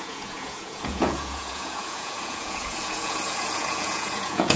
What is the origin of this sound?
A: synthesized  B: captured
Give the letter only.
A